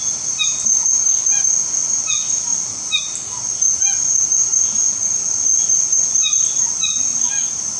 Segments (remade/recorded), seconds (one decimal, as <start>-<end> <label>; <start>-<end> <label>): 0.0-7.8 recorded